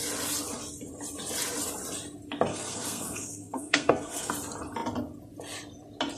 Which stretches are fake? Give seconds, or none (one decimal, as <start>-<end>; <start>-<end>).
2.5-4.3